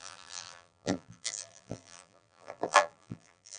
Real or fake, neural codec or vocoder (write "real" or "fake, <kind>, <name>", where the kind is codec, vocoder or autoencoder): fake, vocoder, BigVGAN v2